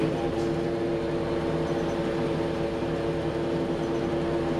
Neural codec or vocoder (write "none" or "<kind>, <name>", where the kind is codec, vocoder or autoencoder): none